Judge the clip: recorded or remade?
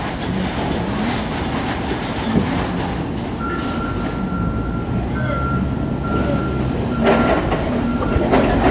recorded